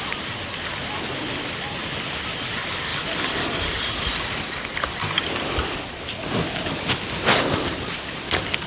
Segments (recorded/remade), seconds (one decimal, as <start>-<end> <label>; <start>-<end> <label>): 0.0-8.7 recorded